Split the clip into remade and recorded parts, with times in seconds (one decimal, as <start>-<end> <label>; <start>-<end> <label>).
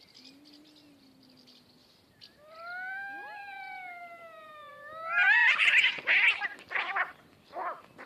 0.0-8.1 recorded